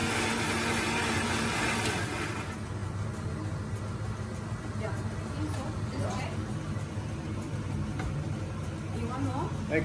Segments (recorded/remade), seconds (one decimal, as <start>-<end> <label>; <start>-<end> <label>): 0.0-9.8 recorded